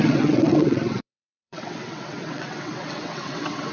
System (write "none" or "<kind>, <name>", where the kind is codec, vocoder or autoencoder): vocoder, WaveNeXt